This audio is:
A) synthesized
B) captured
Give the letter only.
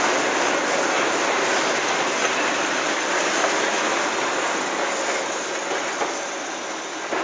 B